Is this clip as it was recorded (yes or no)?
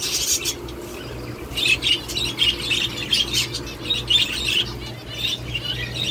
yes